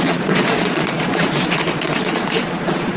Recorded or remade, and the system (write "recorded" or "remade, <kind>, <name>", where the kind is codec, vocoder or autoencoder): remade, vocoder, Vocos